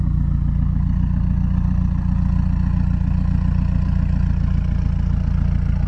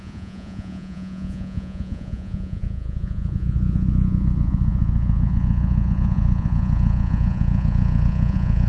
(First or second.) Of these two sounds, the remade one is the second